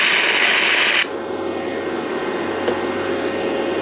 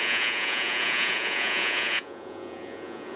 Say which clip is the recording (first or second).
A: first